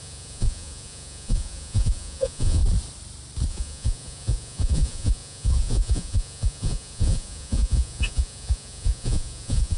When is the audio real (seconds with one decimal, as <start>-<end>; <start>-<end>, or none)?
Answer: 2.6-3.5